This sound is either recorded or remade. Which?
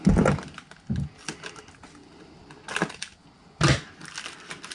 recorded